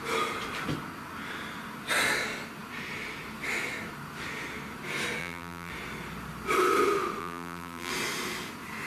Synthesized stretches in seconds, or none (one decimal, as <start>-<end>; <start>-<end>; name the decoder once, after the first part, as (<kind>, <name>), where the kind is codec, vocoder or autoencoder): 5.2-5.7 (vocoder, BigVGAN v2); 7.2-7.9